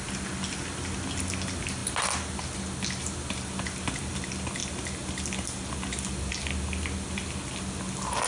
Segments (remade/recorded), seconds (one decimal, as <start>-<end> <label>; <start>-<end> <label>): 0.0-8.3 recorded